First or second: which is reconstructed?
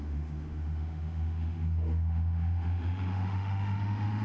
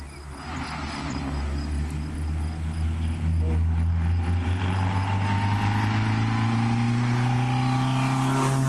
first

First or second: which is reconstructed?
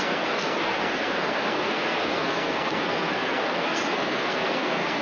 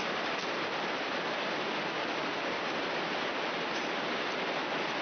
first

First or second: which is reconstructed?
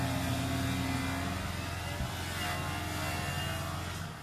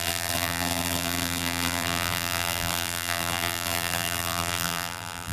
second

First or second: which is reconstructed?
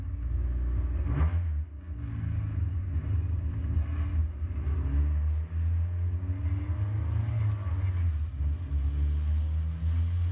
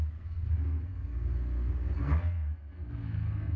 second